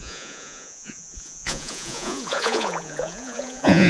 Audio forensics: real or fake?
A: fake